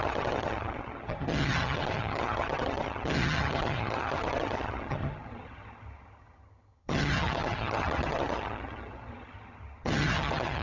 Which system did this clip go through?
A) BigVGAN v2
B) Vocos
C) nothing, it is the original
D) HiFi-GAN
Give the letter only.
D